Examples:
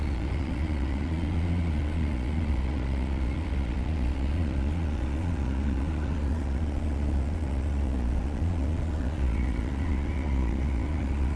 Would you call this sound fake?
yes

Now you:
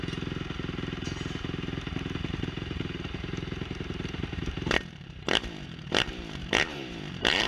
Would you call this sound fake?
yes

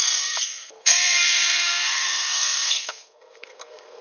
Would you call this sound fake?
yes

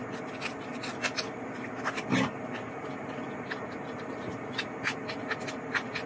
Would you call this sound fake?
no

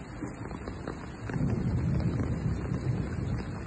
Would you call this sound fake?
no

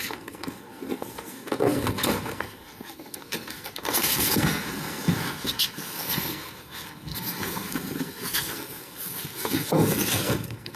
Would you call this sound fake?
yes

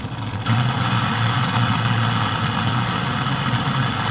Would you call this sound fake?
no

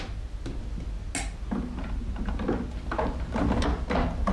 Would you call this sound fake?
no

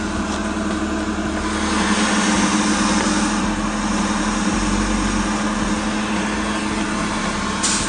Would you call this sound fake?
no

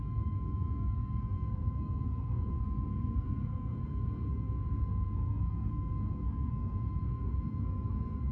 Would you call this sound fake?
yes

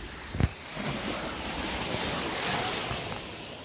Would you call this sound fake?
no